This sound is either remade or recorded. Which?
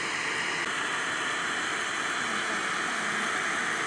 recorded